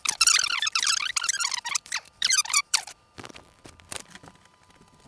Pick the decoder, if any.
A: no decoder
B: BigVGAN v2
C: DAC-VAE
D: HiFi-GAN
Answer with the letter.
B